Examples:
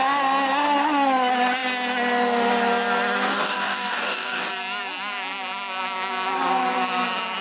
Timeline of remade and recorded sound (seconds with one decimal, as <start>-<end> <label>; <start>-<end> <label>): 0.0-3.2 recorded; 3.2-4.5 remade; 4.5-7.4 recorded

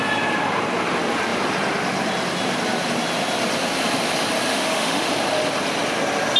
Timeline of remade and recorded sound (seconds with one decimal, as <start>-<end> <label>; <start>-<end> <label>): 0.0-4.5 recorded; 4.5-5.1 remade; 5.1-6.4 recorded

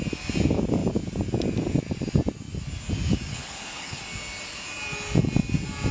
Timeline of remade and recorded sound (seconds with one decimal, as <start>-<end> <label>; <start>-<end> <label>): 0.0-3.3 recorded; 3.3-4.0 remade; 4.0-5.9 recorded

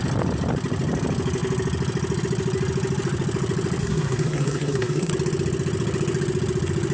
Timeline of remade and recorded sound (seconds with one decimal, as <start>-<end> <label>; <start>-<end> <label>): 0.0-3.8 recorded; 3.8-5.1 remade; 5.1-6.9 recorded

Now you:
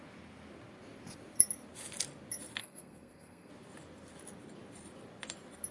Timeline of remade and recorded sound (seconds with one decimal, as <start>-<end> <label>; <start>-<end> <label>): 0.0-2.6 recorded; 2.6-3.5 remade; 3.5-5.7 recorded